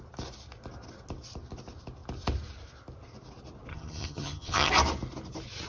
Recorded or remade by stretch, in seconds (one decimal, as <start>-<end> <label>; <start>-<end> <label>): 0.0-3.7 recorded; 3.7-4.7 remade; 4.7-5.7 recorded